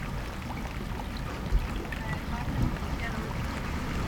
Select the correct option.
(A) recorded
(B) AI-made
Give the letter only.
A